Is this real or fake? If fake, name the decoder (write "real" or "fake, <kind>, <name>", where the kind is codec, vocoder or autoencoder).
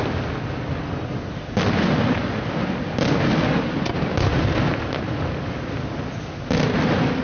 real